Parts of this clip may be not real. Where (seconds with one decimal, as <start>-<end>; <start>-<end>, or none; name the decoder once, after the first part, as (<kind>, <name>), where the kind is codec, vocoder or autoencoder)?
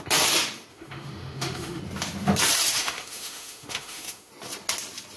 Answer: 0.7-1.8 (autoencoder, DAC-VAE); 2.8-4.3